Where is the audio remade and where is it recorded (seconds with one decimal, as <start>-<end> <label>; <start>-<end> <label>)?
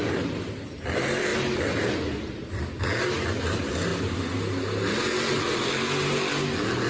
0.0-6.9 recorded